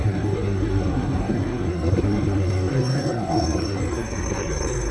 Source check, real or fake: fake